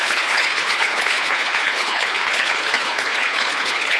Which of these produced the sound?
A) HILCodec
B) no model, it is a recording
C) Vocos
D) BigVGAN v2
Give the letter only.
A